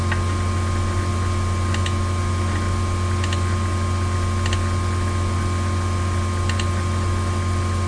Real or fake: real